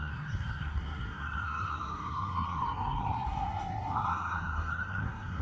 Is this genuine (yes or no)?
no